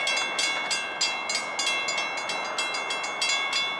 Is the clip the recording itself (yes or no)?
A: yes